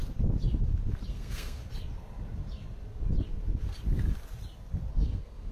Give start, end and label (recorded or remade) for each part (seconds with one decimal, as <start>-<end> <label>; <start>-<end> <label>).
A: 0.0-1.1 recorded; 1.1-1.6 remade; 1.6-4.9 recorded; 4.9-5.5 remade